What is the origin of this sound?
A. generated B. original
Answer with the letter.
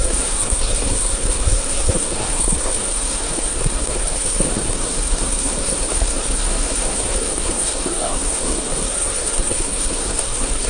A